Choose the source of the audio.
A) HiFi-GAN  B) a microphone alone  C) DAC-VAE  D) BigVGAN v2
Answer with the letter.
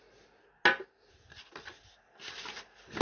B